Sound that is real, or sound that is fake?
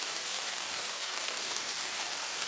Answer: fake